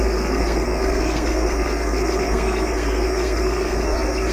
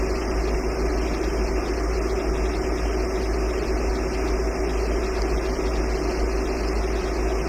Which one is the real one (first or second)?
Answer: second